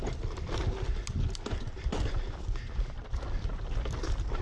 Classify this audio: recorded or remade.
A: recorded